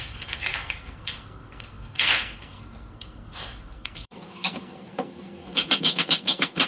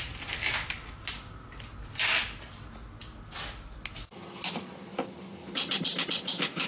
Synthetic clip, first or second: first